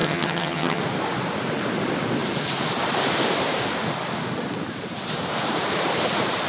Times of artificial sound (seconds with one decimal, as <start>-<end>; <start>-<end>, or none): 0.0-0.8